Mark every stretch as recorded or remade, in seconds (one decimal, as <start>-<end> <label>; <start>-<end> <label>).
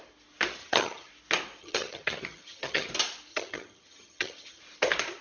0.0-0.6 recorded; 0.6-1.1 remade; 1.1-1.6 recorded; 1.6-2.9 remade; 2.9-3.3 recorded; 3.3-4.6 remade; 4.6-5.2 recorded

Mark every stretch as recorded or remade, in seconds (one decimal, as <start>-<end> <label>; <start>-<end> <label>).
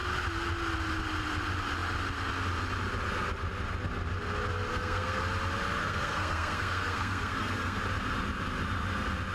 0.0-4.7 recorded; 4.7-5.2 remade; 5.2-5.8 recorded; 5.8-7.8 remade; 7.8-9.3 recorded